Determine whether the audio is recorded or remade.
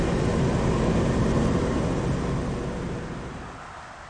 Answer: recorded